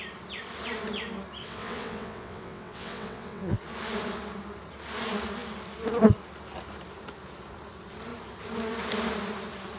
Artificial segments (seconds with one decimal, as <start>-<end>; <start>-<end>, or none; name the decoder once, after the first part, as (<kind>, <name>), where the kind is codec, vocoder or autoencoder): 1.4-3.6 (vocoder, WaveNeXt)